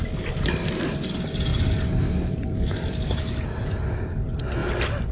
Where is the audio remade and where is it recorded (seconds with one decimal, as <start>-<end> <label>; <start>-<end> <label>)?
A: 0.0-5.1 recorded